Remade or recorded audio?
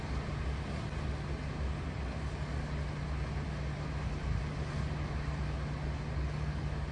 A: recorded